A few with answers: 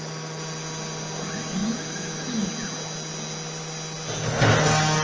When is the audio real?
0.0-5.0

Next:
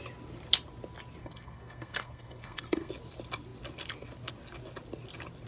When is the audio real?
0.0-1.2; 2.9-5.5